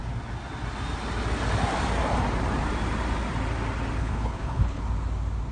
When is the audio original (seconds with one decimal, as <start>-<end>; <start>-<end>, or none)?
0.0-4.0; 4.8-5.5